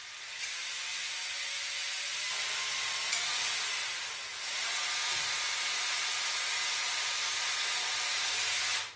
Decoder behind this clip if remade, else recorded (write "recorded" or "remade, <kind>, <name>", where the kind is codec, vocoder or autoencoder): recorded